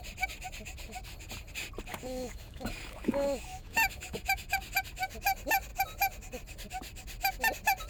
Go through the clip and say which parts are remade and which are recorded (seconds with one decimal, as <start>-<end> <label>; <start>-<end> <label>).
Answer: 0.0-1.9 recorded; 1.9-4.6 remade; 4.6-7.9 recorded